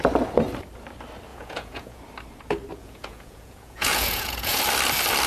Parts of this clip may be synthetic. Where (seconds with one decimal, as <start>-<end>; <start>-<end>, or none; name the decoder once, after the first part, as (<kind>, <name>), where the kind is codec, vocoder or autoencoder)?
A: 1.3-2.0 (vocoder, Vocos); 2.8-4.6